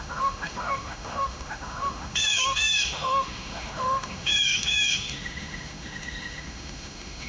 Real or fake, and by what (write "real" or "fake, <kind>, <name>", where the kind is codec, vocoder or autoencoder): fake, autoencoder, DAC-VAE